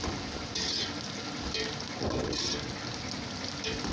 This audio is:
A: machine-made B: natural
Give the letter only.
B